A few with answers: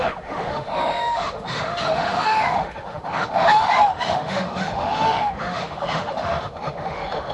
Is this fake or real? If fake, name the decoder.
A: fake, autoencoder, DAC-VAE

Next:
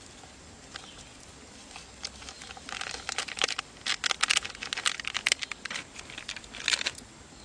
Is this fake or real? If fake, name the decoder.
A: real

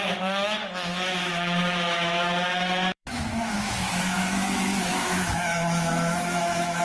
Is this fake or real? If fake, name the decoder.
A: fake, autoencoder, DAC-VAE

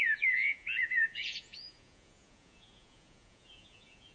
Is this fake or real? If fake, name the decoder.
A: fake, vocoder, Vocos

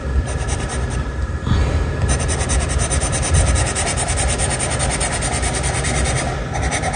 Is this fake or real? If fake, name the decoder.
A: fake, vocoder, BigVGAN v2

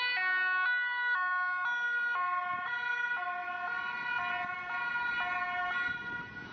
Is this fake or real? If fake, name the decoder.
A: real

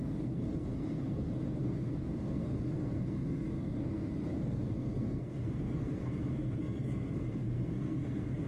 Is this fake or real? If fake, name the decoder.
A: fake, codec, SNAC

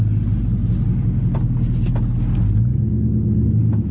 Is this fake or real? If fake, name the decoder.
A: real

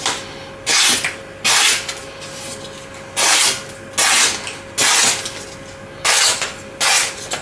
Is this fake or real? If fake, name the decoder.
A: real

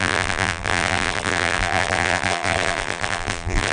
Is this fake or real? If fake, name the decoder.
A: fake, vocoder, BigVGAN v2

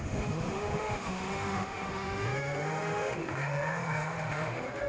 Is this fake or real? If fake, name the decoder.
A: fake, autoencoder, DAC-VAE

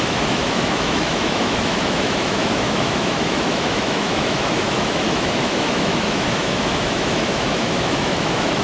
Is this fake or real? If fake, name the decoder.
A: fake, autoencoder, DAC-VAE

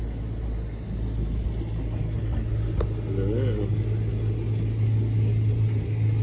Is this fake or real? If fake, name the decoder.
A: real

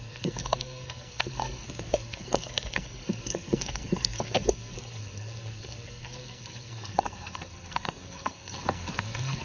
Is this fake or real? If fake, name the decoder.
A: fake, codec, SNAC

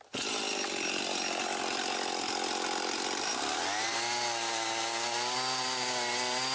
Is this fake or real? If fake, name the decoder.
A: real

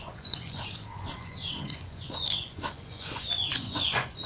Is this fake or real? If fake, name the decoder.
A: fake, vocoder, Vocos